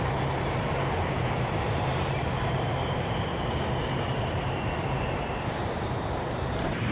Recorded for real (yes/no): no